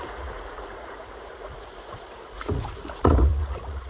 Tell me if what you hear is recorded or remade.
remade